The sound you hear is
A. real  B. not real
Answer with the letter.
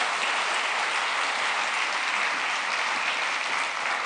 A